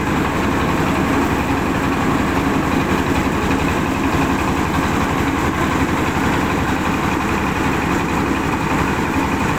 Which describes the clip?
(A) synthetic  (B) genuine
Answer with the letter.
B